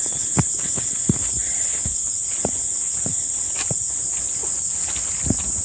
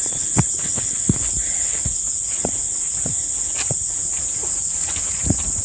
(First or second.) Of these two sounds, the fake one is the second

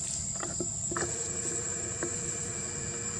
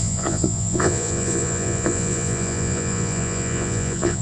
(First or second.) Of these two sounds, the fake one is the second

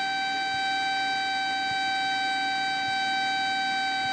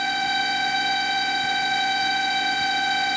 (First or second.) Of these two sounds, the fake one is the second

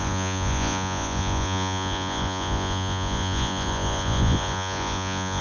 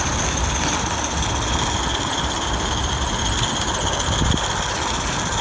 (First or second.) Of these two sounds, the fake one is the first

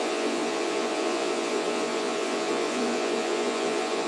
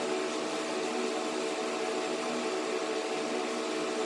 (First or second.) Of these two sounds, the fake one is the first